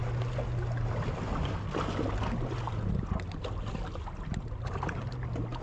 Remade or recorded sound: recorded